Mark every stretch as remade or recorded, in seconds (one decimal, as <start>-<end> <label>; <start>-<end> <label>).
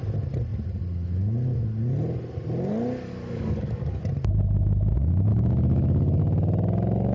0.0-3.1 recorded; 3.1-4.0 remade; 4.0-5.3 recorded; 5.3-6.2 remade; 6.2-7.1 recorded